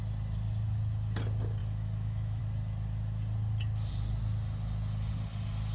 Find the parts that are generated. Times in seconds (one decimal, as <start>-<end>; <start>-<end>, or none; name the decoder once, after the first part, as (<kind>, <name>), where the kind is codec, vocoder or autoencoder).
1.6-2.4 (autoencoder, DAC-VAE)